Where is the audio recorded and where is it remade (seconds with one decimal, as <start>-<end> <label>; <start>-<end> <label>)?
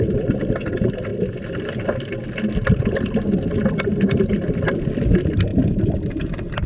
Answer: 0.0-6.7 recorded